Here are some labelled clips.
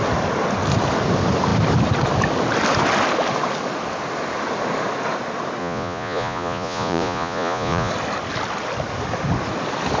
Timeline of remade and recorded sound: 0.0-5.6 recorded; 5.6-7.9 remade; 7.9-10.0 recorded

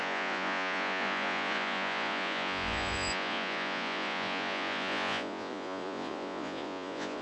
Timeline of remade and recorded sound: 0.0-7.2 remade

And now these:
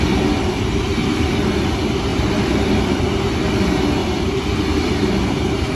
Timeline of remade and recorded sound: 0.0-0.9 recorded; 0.9-1.5 remade; 1.5-2.1 recorded; 2.1-3.0 remade; 3.0-4.0 recorded; 4.0-4.6 remade; 4.6-5.7 recorded

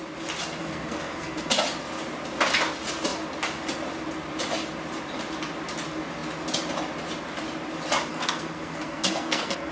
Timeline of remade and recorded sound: 0.0-0.6 recorded; 0.6-1.5 remade; 1.5-8.1 recorded; 8.1-9.7 remade

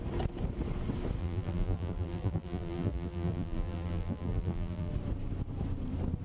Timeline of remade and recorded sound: 0.0-1.2 recorded; 1.2-4.9 remade; 4.9-6.2 recorded

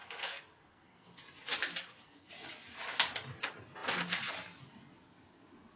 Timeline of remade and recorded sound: 0.0-1.2 remade; 1.2-1.8 recorded; 1.8-2.3 remade; 2.3-5.8 recorded